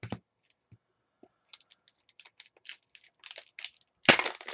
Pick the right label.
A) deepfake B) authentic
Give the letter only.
B